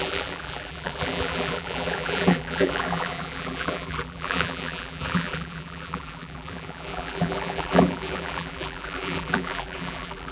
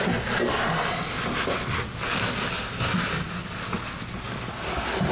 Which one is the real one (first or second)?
second